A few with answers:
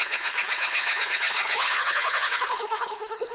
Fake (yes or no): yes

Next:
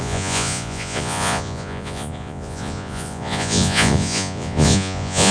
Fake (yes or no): yes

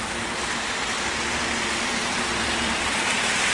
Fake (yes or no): yes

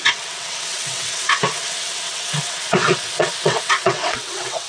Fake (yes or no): yes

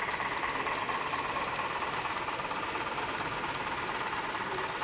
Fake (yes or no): no